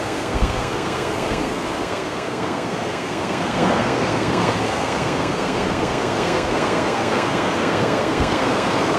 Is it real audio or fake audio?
fake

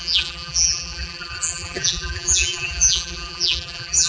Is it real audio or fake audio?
fake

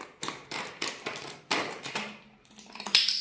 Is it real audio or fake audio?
real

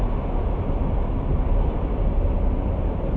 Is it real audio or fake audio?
real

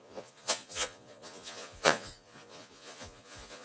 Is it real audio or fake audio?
fake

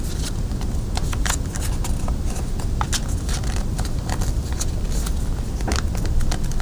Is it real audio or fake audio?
real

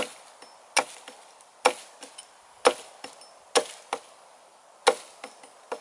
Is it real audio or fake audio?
real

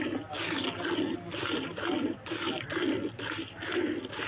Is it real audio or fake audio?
real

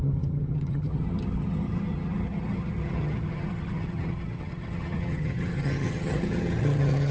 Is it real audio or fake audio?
fake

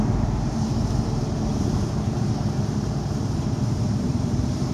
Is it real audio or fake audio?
fake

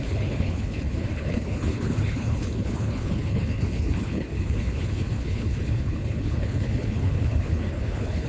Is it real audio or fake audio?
fake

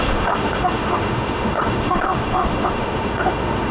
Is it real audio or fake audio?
fake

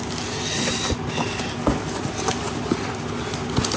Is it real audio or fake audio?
real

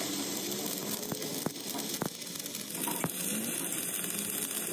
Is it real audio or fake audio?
real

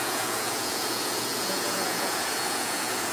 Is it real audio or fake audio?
fake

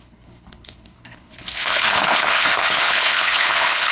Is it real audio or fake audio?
fake